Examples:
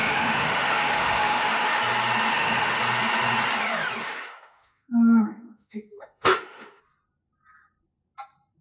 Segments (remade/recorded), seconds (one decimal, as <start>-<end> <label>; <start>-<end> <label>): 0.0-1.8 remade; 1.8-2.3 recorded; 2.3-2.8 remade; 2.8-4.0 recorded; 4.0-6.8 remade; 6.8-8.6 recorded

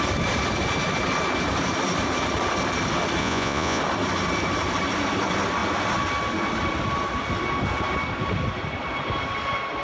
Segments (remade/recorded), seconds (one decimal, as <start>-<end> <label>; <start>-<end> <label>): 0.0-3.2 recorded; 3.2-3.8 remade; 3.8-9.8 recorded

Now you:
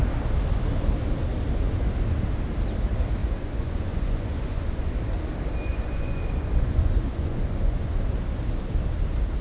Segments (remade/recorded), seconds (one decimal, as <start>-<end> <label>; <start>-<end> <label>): 0.0-3.2 recorded; 3.2-4.9 remade; 4.9-5.7 recorded; 5.7-8.0 remade; 8.0-9.4 recorded

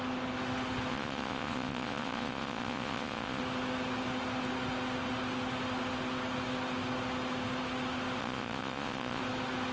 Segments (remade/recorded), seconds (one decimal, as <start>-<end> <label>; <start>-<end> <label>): 0.0-0.9 recorded; 0.9-3.4 remade; 3.4-8.2 recorded; 8.2-9.2 remade; 9.2-9.7 recorded